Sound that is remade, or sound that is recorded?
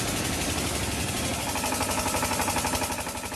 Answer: recorded